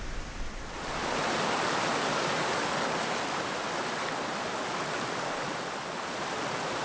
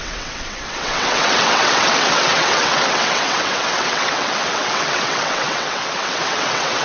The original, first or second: first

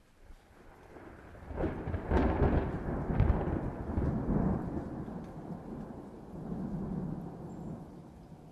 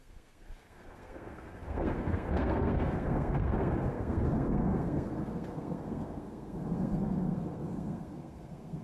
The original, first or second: first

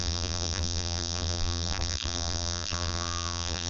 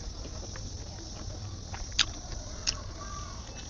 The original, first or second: second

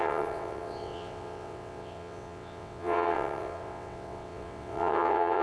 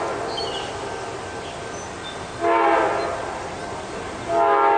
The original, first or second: second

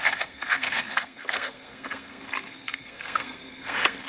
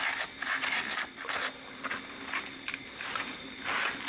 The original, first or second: second